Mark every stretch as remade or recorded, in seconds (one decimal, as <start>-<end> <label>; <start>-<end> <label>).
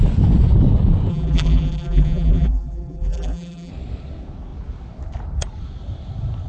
0.0-1.1 recorded; 1.1-3.7 remade; 3.7-6.5 recorded